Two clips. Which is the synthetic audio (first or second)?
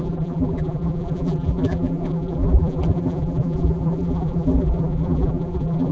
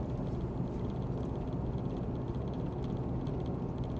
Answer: first